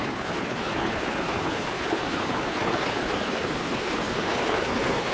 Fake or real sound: fake